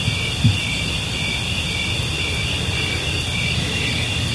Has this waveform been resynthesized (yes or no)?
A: no